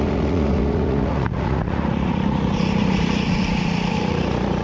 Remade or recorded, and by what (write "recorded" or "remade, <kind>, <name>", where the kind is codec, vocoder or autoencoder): remade, vocoder, Vocos